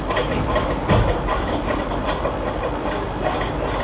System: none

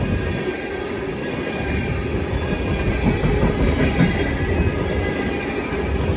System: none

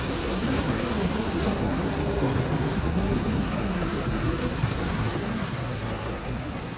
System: codec, SNAC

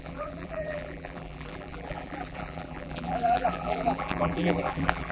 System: vocoder, BigVGAN v2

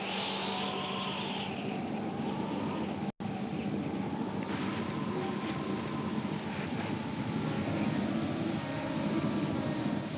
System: none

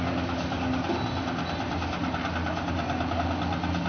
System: none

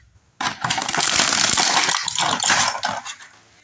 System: none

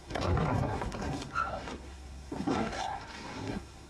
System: codec, SNAC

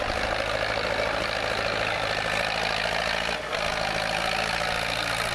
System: none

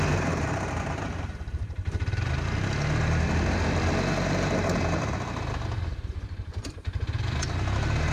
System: none